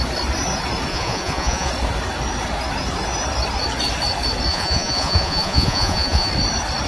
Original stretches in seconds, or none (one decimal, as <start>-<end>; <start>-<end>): 0.0-0.9; 1.7-4.5; 6.3-6.9